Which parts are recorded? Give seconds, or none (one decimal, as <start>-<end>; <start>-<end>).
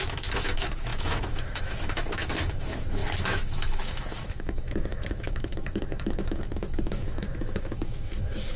none